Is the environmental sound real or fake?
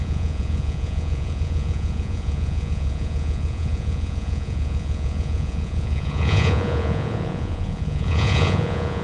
fake